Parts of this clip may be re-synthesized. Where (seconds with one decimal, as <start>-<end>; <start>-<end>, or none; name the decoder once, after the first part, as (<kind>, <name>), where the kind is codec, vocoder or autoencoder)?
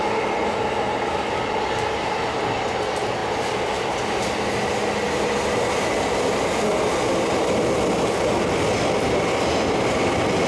none